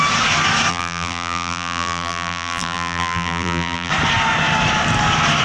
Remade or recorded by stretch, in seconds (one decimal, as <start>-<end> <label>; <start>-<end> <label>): 0.0-0.7 recorded; 0.7-3.9 remade; 3.9-5.4 recorded